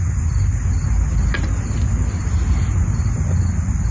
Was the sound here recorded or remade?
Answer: recorded